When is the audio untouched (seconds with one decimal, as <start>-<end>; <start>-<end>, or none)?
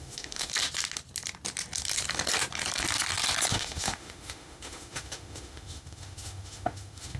0.5-3.5